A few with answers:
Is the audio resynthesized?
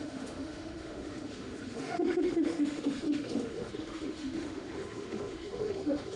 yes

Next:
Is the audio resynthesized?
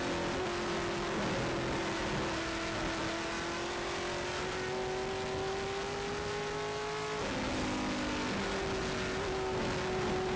no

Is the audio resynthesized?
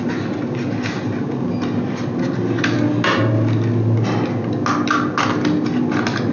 no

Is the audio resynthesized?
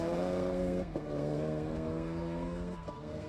yes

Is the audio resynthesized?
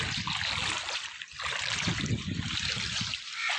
no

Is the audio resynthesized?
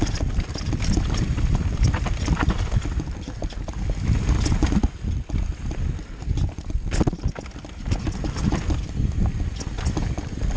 no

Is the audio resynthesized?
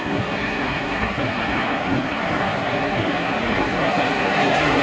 yes